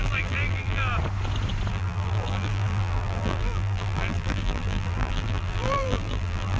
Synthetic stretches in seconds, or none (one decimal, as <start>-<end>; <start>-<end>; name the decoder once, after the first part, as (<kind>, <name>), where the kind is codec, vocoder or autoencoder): 0.0-0.9 (vocoder, BigVGAN v2); 1.7-6.6